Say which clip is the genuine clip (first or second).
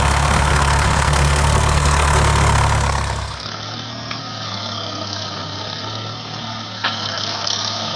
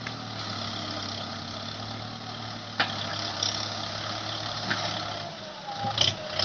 second